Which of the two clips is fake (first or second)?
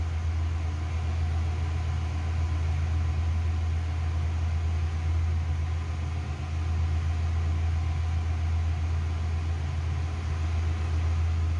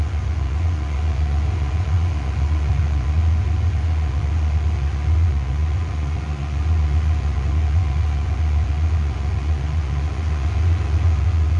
second